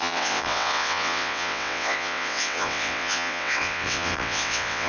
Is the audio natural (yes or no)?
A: no